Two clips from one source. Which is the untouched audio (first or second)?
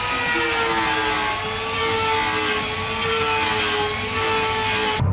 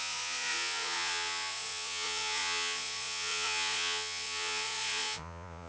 first